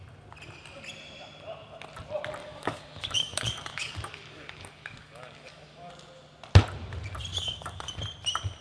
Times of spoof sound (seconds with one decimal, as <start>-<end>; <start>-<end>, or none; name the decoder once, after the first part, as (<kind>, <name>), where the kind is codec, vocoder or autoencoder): 2.4-5.9 (codec, DAC); 7.3-7.9